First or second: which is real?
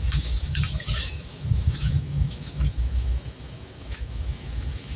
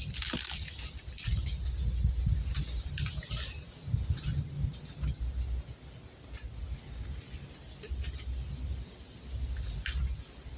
second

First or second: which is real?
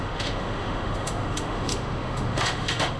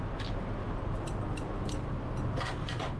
second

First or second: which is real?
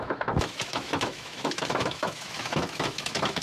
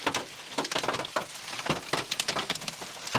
second